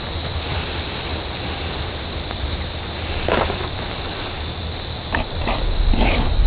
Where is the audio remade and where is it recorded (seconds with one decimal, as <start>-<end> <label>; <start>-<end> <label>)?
0.0-6.5 recorded